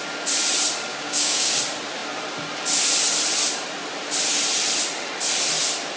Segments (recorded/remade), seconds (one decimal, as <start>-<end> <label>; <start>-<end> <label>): 0.0-0.9 recorded; 0.9-1.5 remade; 1.5-6.0 recorded